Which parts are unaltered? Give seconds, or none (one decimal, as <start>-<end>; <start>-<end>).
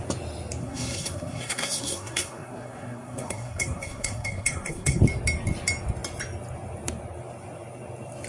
0.0-0.6; 5.0-8.3